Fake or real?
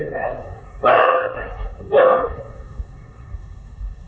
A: fake